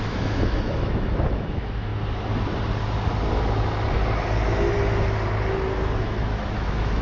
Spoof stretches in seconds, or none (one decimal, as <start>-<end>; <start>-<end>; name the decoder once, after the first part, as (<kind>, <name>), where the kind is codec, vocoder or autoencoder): 0.0-1.9 (autoencoder, DAC-VAE); 6.0-7.0